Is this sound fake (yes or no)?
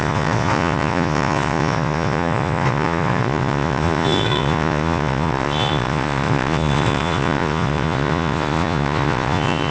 yes